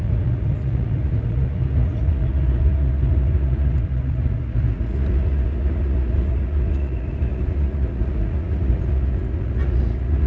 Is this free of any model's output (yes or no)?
no